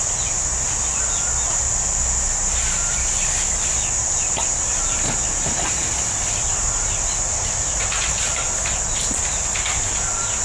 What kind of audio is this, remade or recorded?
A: recorded